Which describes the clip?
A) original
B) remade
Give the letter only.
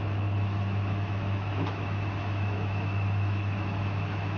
B